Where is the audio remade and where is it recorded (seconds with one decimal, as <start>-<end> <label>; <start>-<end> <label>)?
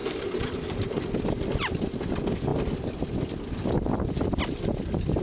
0.0-5.2 recorded